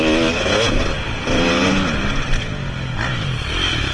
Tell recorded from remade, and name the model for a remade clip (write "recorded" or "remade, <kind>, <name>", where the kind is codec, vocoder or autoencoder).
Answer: recorded